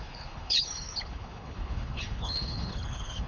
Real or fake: fake